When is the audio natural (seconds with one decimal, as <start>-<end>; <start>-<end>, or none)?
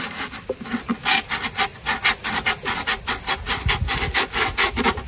0.0-5.1